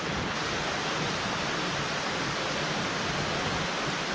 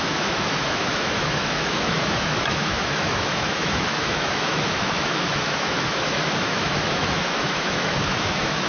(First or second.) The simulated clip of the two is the second